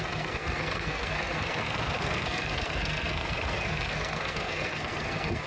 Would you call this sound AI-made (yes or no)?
yes